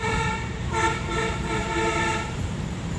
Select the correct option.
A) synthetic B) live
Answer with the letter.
A